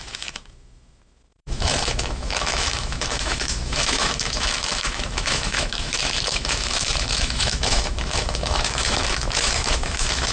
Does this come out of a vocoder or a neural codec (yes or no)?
yes